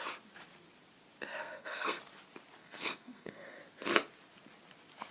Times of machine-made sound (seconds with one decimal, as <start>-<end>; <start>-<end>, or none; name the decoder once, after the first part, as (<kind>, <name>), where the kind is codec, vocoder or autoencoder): 1.4-2.0 (codec, SNAC); 2.6-3.6